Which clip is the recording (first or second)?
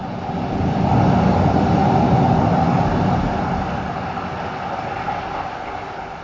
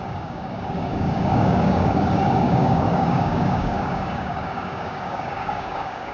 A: first